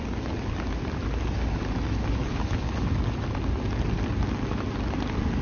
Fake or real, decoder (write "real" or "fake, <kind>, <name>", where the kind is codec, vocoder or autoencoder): real